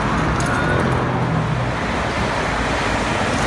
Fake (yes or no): no